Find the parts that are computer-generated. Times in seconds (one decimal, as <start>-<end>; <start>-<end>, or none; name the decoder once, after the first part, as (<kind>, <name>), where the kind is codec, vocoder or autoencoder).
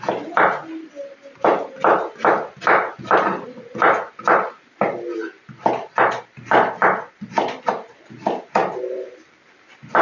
none